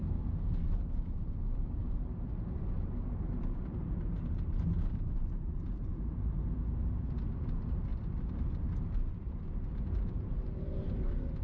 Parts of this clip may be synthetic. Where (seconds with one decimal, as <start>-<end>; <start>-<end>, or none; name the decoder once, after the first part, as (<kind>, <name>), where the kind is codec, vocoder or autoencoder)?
0.0-7.9 (vocoder, BigVGAN v2); 8.6-11.4